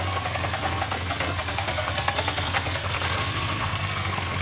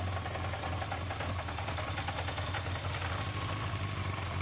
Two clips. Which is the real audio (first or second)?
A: second